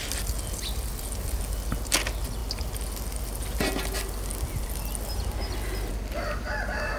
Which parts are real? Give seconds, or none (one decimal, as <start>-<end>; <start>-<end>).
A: 0.0-7.0